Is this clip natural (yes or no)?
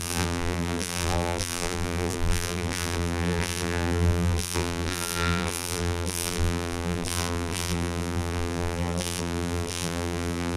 no